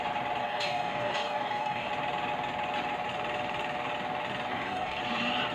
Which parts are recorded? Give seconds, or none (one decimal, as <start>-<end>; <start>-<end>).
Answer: 0.0-0.4; 1.9-4.5; 5.0-5.5